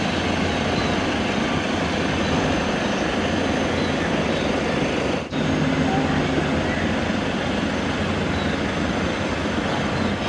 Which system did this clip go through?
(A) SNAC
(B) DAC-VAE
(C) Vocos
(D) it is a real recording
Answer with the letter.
D